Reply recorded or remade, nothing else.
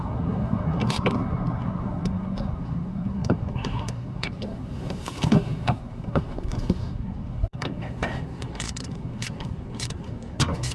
remade